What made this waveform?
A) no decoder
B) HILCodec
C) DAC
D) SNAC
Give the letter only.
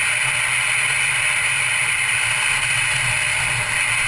A